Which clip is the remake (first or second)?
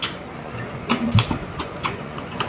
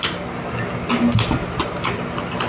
first